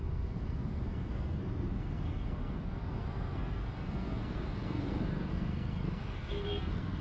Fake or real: fake